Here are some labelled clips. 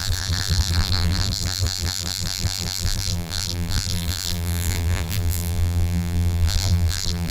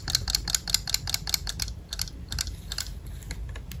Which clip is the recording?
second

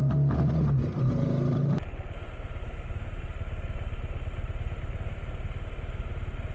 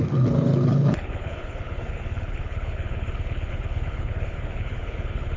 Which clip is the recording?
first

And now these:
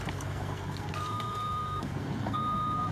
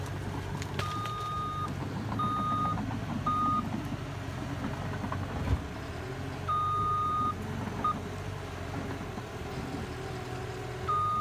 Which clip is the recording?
second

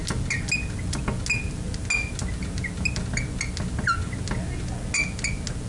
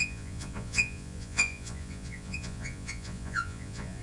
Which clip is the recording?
first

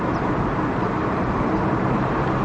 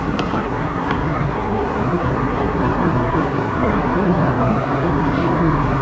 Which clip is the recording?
first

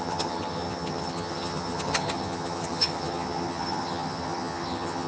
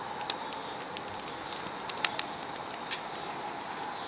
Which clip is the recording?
second